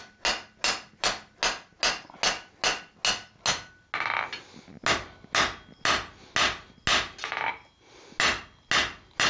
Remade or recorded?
recorded